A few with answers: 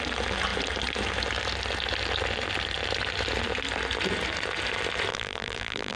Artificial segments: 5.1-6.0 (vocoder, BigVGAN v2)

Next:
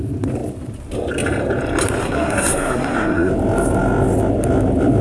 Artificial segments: 2.0-3.3 (codec, SNAC)

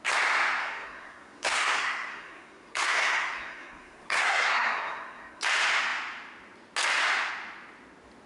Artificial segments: 0.6-5.4 (codec, SNAC)